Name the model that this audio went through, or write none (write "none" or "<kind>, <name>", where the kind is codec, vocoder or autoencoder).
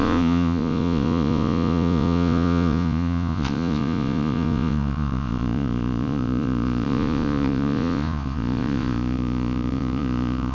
vocoder, Vocos